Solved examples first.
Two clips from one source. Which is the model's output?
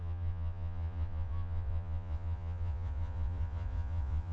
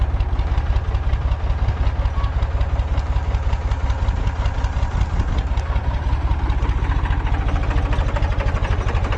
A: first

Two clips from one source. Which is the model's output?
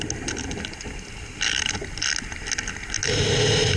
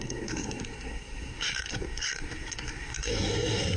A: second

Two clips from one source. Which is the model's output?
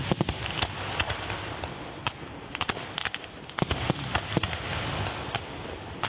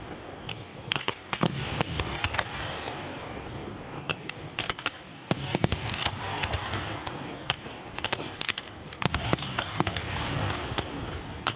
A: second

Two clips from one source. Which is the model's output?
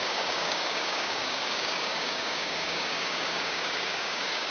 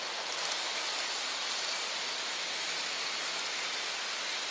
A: first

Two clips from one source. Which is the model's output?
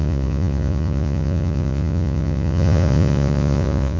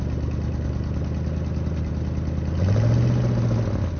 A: first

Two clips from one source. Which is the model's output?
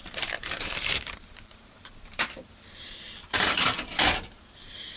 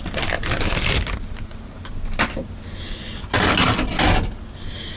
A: first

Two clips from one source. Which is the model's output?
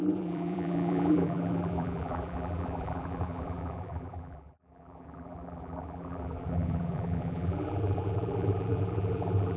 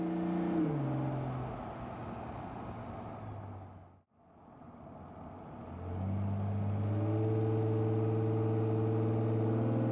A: first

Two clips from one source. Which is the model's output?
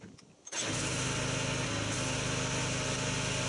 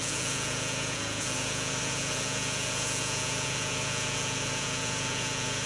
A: second